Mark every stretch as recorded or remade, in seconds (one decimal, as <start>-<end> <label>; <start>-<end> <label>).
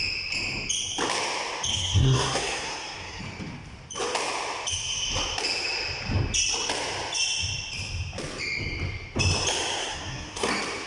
0.0-1.7 recorded; 1.7-3.2 remade; 3.2-9.8 recorded; 9.8-10.5 remade; 10.5-10.9 recorded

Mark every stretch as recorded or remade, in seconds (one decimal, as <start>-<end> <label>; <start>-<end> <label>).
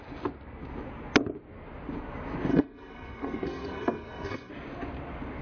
0.0-2.5 recorded; 2.5-4.5 remade; 4.5-5.4 recorded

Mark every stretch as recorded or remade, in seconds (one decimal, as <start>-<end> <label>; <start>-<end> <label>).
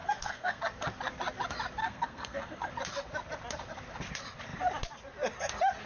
0.0-0.6 remade; 0.6-1.8 recorded; 1.8-2.7 remade; 2.7-5.9 recorded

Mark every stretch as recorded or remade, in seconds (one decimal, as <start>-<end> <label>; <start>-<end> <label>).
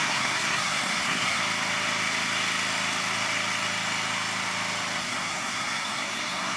0.0-1.4 remade; 1.4-5.0 recorded; 5.0-6.6 remade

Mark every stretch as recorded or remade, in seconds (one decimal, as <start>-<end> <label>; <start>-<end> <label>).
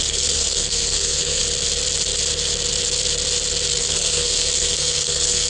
0.0-1.4 remade; 1.4-3.8 recorded; 3.8-5.5 remade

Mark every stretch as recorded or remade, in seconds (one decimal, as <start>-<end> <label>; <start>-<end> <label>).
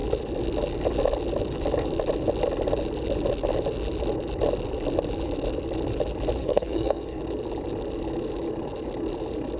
0.0-6.4 recorded; 6.4-7.2 remade; 7.2-9.6 recorded